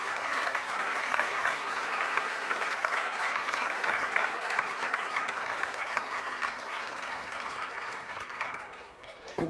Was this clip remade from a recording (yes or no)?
yes